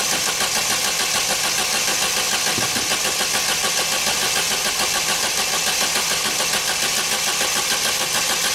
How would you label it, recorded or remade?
recorded